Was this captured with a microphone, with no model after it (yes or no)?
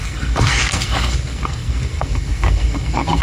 no